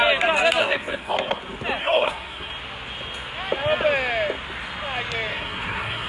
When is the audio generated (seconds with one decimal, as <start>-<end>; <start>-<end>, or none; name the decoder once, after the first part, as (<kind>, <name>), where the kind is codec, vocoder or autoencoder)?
0.6-1.4 (codec, SNAC); 1.8-2.5; 5.3-6.1